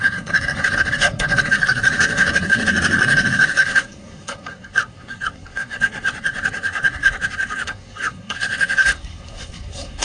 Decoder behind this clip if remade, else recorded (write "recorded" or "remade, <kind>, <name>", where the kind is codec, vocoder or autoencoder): remade, codec, SNAC